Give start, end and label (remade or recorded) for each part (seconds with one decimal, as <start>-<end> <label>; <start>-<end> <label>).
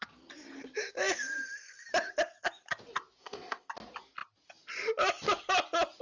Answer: 0.0-3.2 recorded; 3.2-3.7 remade; 3.7-6.0 recorded